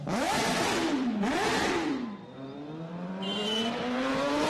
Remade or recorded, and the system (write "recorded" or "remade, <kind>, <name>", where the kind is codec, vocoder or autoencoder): remade, vocoder, BigVGAN v2